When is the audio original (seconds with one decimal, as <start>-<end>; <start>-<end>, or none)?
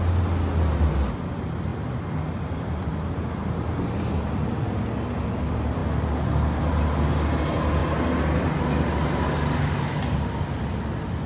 0.0-11.3